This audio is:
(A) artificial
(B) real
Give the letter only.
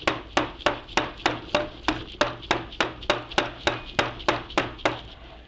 B